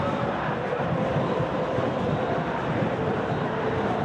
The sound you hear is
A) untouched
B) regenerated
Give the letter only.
B